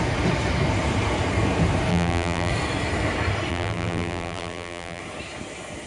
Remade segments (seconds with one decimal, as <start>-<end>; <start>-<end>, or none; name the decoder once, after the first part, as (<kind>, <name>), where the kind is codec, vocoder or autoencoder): 1.9-2.5 (vocoder, BigVGAN v2); 3.5-5.0